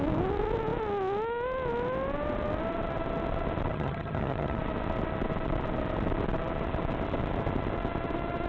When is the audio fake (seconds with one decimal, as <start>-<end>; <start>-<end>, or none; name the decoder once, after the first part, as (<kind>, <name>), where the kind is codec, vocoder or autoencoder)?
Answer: 3.7-4.6 (vocoder, HiFi-GAN)